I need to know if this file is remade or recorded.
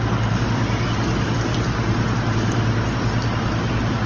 recorded